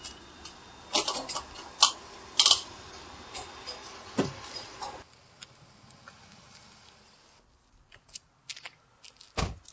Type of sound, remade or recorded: recorded